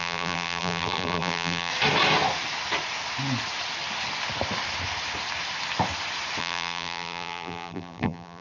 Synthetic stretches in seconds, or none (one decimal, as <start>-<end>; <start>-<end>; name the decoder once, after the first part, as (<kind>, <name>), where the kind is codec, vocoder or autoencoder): 0.0-1.7 (vocoder, BigVGAN v2); 6.4-8.4